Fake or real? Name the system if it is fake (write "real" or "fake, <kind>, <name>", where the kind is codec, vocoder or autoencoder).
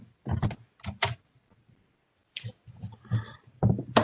real